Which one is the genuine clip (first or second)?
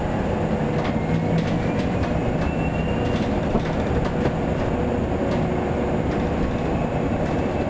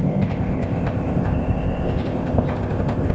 first